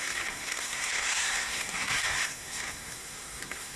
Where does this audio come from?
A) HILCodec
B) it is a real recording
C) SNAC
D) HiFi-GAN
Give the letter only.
C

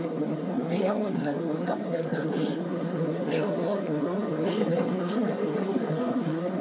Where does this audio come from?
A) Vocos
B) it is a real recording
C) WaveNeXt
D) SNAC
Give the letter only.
D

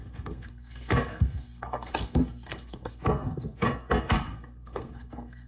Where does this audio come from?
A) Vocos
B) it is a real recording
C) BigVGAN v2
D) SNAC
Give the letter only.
D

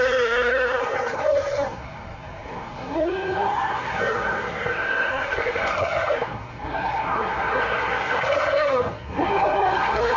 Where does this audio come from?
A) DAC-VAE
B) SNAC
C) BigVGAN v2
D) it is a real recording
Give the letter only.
B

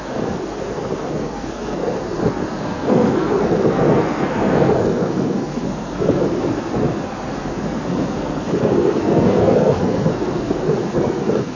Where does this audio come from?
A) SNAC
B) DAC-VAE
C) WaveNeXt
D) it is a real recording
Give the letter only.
A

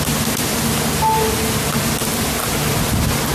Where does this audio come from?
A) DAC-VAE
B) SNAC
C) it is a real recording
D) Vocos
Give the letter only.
C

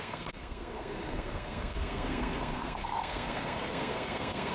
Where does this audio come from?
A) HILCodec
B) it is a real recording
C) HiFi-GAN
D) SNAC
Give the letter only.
D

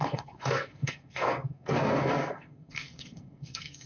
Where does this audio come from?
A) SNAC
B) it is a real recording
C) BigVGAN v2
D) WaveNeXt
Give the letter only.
A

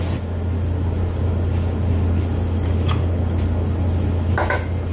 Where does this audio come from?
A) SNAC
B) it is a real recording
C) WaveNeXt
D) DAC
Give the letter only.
B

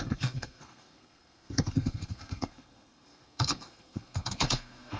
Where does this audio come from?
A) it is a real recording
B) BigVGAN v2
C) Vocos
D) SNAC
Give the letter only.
D